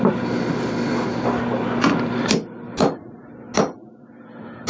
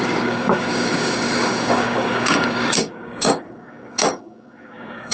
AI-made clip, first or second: second